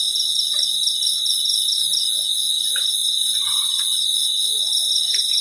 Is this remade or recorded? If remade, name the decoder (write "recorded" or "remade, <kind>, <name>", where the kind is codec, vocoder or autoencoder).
recorded